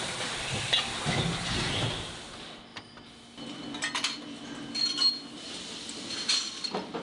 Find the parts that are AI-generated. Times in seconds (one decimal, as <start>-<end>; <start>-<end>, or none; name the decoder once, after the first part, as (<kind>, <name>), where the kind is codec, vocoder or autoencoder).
none